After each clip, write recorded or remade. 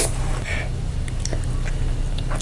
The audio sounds recorded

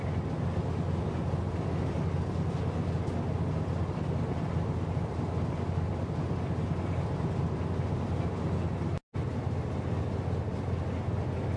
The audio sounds recorded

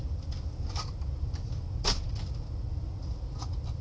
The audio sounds recorded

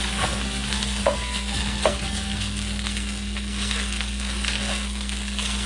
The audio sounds remade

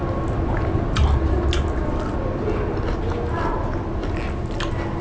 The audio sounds recorded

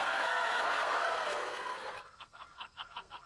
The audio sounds remade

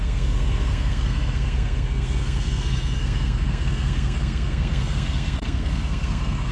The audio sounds remade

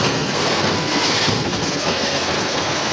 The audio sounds remade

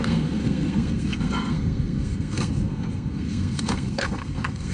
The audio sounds remade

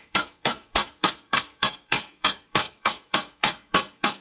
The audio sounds remade